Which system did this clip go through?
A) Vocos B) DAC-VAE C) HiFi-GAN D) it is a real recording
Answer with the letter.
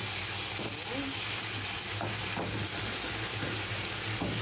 D